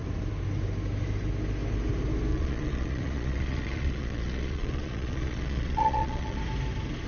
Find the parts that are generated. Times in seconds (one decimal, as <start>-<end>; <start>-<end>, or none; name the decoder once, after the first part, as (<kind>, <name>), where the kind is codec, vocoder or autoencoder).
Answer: 2.3-6.4 (vocoder, Vocos)